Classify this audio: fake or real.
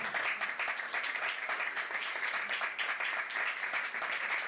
real